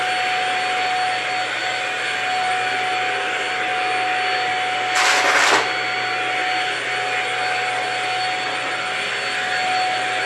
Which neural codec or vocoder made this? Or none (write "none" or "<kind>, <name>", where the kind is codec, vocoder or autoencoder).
none